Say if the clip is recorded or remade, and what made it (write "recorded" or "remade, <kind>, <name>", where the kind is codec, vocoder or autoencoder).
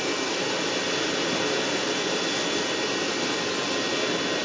recorded